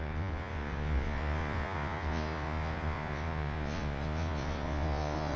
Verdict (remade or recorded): remade